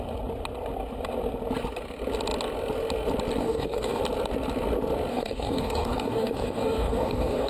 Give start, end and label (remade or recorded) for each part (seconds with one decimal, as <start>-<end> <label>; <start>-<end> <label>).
0.0-3.4 recorded; 3.4-4.0 remade; 4.0-5.1 recorded; 5.1-7.5 remade